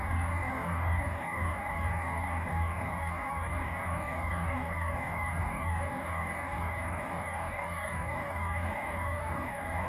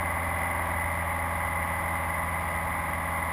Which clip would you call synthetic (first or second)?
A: first